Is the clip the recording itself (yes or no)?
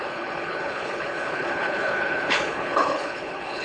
no